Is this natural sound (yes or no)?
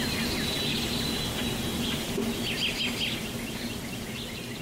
yes